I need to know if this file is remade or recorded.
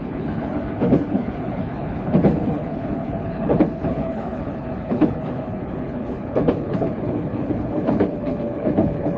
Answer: remade